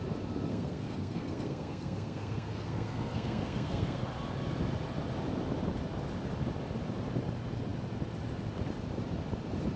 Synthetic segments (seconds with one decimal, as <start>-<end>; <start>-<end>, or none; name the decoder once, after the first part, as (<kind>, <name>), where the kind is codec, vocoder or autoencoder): 0.5-4.0 (codec, SNAC)